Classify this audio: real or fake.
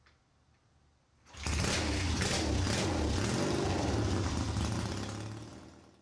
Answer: real